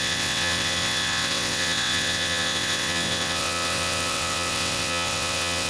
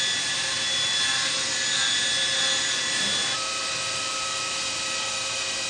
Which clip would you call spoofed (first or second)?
first